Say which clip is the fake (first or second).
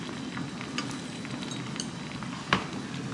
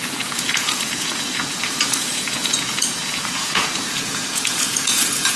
second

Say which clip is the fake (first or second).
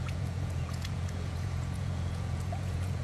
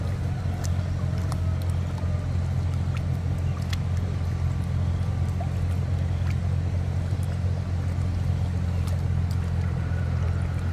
first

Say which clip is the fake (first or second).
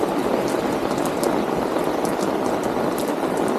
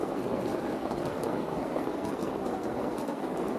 second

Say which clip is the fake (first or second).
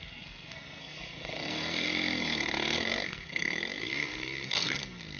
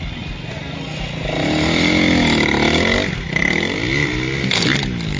first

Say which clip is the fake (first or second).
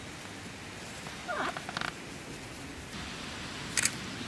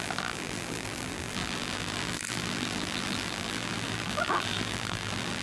second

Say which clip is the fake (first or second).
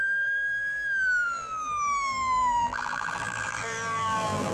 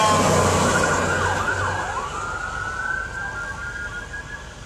first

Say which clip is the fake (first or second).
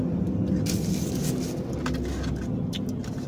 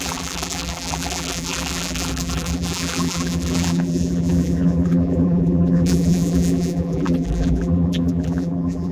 second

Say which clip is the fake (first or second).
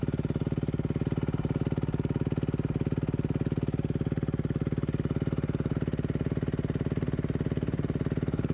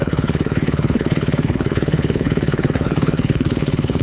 second